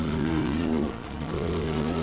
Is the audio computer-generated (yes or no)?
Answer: yes